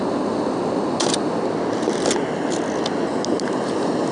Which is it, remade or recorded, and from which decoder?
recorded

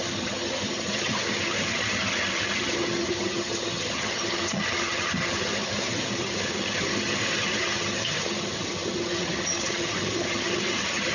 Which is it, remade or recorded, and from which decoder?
remade, vocoder, HiFi-GAN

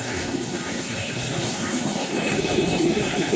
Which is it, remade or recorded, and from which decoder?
remade, codec, SNAC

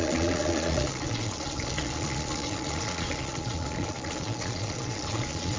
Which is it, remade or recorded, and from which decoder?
remade, vocoder, Vocos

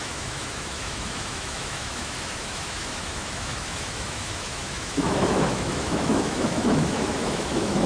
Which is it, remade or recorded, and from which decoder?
remade, autoencoder, DAC-VAE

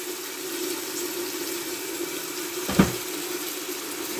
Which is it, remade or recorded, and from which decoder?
recorded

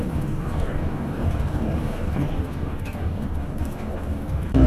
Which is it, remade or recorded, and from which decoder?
remade, codec, DAC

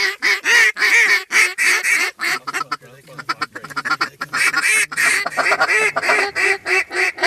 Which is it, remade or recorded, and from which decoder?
recorded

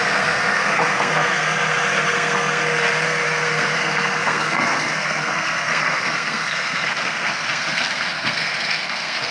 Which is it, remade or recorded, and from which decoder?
remade, codec, SNAC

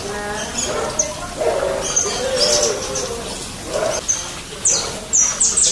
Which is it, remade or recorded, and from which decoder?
recorded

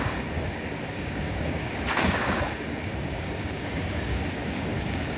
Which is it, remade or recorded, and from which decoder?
remade, codec, DAC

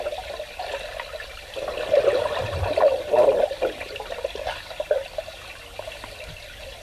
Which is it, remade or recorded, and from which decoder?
recorded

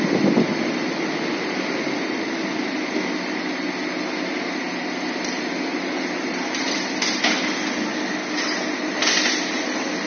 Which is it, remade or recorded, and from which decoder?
recorded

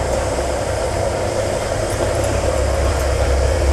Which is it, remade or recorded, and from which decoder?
remade, vocoder, BigVGAN v2